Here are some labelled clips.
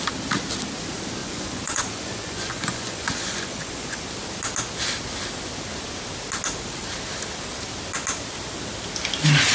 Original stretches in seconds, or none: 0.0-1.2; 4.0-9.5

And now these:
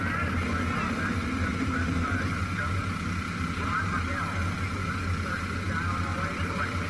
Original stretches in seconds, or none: 0.0-1.5; 4.2-4.8; 5.4-6.1

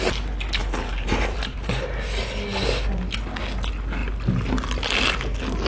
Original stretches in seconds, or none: 0.0-0.6; 1.7-5.7

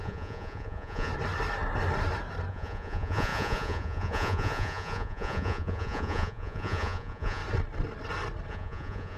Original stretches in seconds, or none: 1.1-2.5; 7.4-8.5

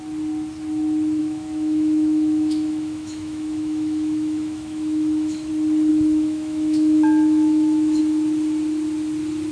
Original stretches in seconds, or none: 0.0-1.2; 5.5-5.9; 8.0-9.5

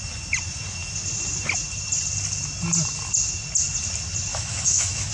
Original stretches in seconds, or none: 0.0-4.3

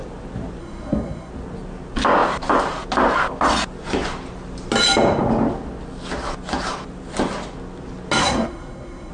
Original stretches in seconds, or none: 0.0-0.6; 1.3-8.2